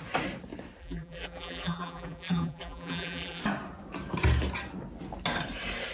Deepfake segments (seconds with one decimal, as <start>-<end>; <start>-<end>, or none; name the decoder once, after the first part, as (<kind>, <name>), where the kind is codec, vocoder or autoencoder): 0.8-3.4 (vocoder, BigVGAN v2)